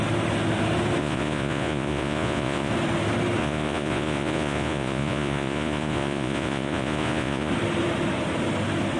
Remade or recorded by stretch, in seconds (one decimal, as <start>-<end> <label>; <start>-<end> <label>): 0.0-1.0 recorded; 1.0-2.7 remade; 2.7-3.4 recorded; 3.4-7.5 remade; 7.5-9.0 recorded